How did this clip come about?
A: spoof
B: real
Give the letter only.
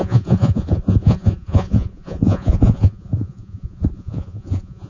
A